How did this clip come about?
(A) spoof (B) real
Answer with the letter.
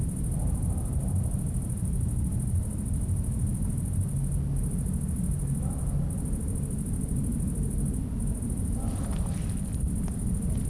B